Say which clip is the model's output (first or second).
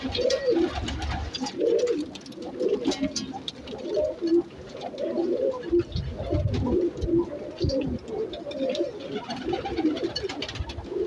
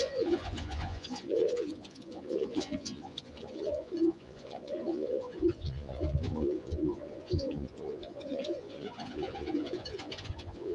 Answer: second